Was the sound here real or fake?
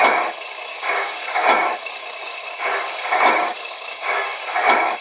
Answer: fake